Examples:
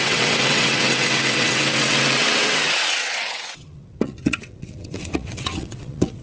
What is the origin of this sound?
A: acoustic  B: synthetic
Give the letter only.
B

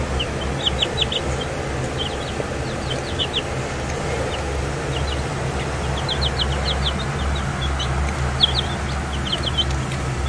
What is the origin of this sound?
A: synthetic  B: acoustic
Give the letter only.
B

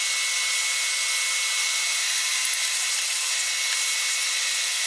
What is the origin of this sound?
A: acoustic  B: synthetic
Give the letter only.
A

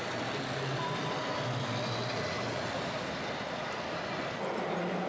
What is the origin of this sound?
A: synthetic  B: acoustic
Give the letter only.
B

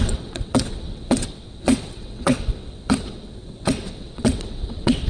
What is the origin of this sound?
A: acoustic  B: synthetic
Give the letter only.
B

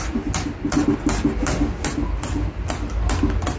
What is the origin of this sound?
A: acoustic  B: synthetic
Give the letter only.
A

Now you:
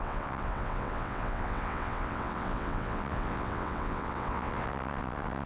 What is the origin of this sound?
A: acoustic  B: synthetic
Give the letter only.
B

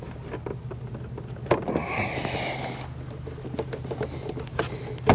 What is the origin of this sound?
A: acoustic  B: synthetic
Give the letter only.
A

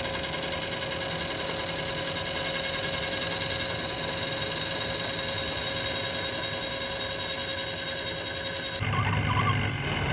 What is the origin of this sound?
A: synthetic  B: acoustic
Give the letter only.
B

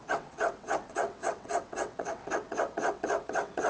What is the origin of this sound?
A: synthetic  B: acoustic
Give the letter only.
A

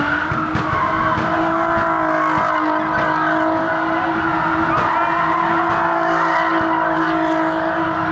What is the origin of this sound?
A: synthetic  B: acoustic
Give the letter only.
B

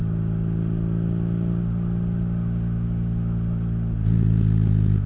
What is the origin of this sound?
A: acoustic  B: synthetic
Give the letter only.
A